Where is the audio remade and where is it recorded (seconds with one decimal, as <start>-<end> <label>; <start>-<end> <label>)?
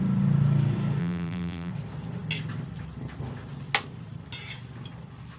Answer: 0.0-1.0 recorded; 1.0-1.7 remade; 1.7-5.4 recorded